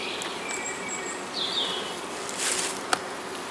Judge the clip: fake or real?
real